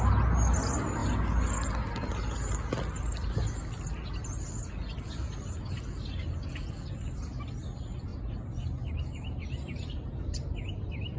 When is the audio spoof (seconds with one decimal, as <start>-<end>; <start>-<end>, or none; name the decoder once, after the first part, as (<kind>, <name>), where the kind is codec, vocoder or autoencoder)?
none